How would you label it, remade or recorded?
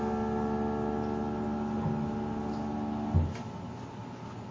recorded